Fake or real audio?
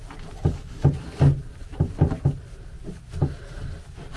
real